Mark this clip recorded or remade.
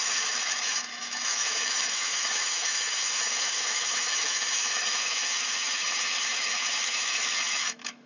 remade